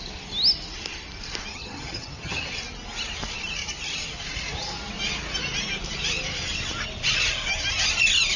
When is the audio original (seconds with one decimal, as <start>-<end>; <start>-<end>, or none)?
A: 0.0-1.5; 2.6-8.4